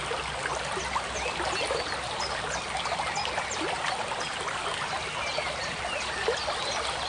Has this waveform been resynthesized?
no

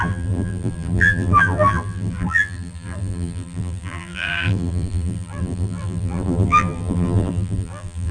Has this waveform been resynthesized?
yes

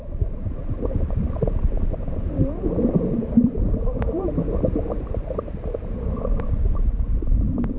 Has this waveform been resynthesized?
yes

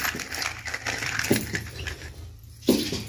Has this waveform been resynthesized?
yes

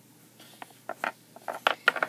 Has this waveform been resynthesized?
no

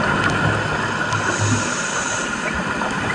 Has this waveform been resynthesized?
no